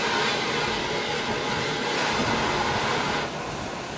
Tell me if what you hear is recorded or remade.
recorded